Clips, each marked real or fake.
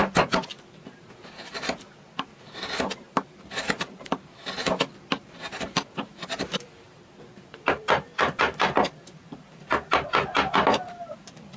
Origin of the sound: fake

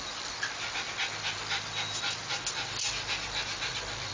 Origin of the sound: real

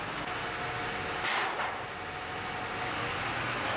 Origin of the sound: real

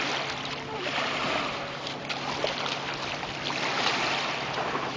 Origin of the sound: real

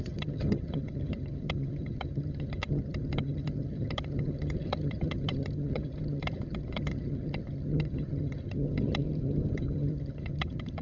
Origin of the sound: fake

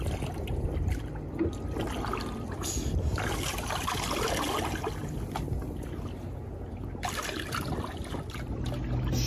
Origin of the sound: real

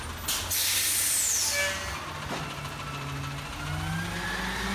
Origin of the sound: real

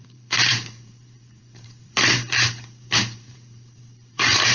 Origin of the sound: fake